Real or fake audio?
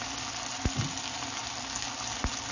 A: real